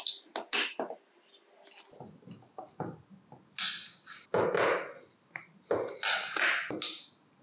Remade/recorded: recorded